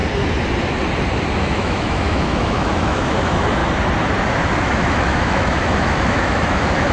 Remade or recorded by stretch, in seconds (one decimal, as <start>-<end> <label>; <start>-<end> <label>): 0.0-1.4 recorded; 1.4-3.6 remade; 3.6-4.6 recorded; 4.6-6.9 remade